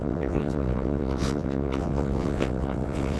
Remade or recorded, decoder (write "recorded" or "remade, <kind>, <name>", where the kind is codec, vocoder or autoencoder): remade, vocoder, WaveNeXt